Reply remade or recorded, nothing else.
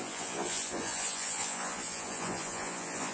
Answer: remade